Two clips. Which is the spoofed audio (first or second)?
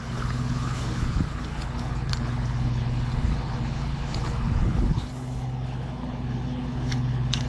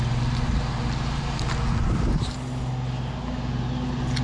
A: first